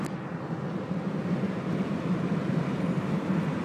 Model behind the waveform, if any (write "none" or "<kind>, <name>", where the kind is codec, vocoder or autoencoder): none